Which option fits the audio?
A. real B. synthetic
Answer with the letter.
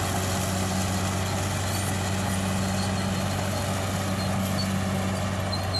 A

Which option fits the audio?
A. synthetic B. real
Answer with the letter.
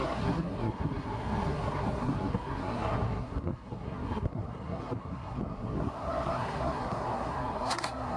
A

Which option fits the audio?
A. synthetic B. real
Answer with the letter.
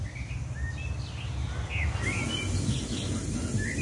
B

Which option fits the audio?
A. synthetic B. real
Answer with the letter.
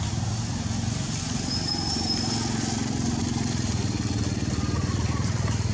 B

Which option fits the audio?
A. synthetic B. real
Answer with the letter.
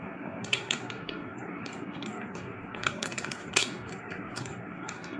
A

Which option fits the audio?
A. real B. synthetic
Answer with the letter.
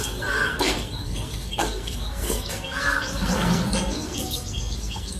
B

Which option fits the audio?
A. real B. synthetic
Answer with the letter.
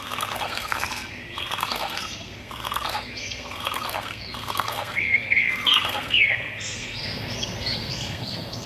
B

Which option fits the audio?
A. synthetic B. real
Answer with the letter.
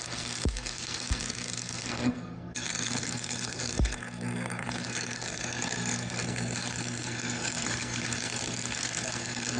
A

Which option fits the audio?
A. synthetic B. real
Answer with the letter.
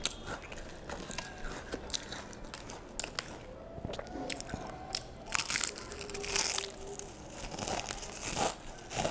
B